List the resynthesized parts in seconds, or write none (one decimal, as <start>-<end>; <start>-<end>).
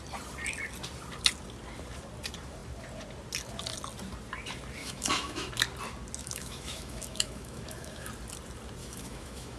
4.8-5.5; 6.2-8.1; 8.8-9.6